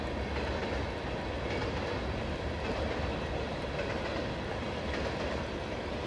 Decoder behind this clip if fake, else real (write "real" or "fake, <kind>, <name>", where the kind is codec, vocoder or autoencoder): real